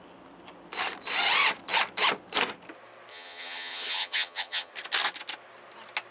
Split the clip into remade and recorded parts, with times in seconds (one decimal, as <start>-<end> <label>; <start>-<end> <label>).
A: 0.0-3.1 recorded; 3.1-4.7 remade; 4.7-6.1 recorded